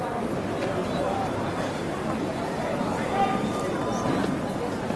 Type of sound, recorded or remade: recorded